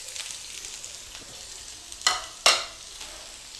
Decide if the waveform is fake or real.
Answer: real